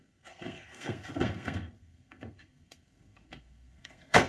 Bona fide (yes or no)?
no